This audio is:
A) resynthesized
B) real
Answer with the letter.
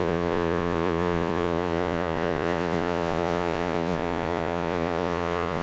A